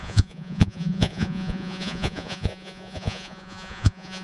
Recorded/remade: remade